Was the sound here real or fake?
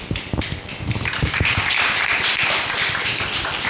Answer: real